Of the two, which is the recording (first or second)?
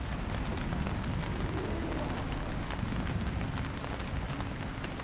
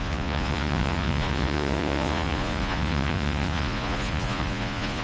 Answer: first